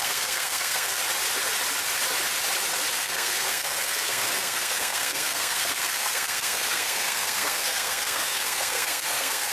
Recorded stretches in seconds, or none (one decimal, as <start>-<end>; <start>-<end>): 1.0-2.9